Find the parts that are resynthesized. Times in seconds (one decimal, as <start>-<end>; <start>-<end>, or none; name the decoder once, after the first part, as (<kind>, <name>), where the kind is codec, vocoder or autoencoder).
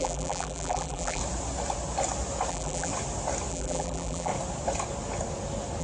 0.0-1.2 (vocoder, BigVGAN v2); 2.5-2.9; 3.5-4.3